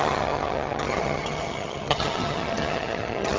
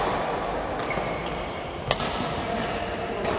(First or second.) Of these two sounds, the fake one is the first